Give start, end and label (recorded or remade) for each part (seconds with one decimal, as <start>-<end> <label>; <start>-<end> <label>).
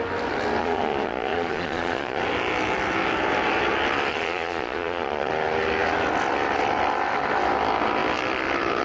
0.0-0.6 recorded; 0.6-2.2 remade; 2.2-4.1 recorded; 4.1-5.3 remade; 5.3-8.8 recorded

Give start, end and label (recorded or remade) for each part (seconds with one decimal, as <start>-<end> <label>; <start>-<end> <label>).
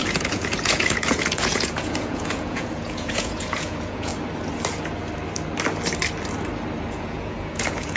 0.0-4.1 remade; 4.1-6.9 recorded; 6.9-8.0 remade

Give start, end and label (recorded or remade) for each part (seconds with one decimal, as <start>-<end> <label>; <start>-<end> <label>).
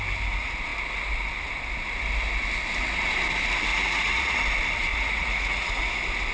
0.0-3.7 recorded; 3.7-4.4 remade; 4.4-4.9 recorded; 4.9-5.8 remade; 5.8-6.3 recorded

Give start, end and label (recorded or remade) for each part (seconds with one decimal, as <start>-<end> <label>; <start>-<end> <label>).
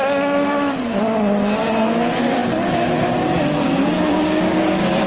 0.0-1.0 remade; 1.0-5.1 recorded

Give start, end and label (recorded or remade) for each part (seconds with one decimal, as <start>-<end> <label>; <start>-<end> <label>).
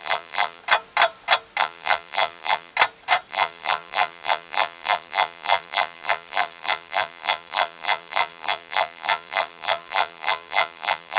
0.0-0.6 remade; 0.6-1.6 recorded; 1.6-2.7 remade; 2.7-3.3 recorded; 3.3-11.2 remade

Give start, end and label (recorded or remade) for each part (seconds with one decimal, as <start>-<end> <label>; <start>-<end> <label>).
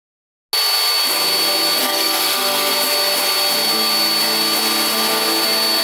0.0-1.8 recorded; 1.8-2.7 remade; 2.7-5.8 recorded